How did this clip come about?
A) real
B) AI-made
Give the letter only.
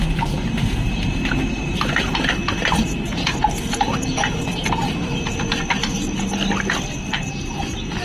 A